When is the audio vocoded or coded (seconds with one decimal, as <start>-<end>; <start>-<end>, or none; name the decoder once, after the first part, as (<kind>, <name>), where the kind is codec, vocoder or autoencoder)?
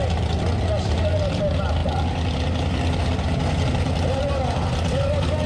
none